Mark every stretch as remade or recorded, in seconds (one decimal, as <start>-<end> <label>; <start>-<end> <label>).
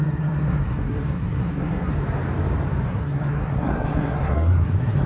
0.0-1.9 remade; 1.9-2.9 recorded; 2.9-5.1 remade